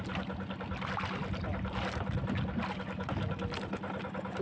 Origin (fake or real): real